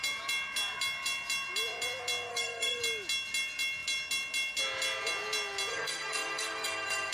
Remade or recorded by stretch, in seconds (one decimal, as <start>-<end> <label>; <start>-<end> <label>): 0.0-2.3 recorded; 2.3-2.8 remade; 2.8-5.7 recorded; 5.7-7.1 remade